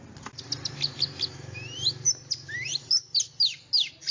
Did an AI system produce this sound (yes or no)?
no